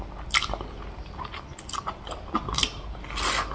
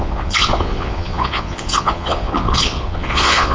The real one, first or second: first